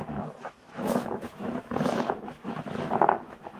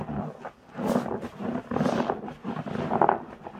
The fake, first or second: first